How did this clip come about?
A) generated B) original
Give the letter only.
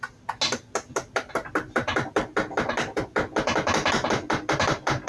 B